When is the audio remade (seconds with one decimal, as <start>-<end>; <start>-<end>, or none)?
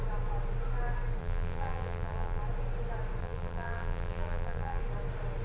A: 1.2-2.4; 3.2-4.8